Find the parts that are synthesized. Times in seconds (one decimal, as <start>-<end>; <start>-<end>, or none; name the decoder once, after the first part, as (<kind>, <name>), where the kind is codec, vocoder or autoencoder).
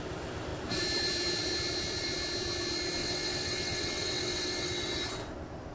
3.0-5.0 (vocoder, WaveNeXt)